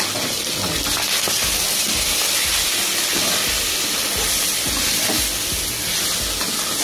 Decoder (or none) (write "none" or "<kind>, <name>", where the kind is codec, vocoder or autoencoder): none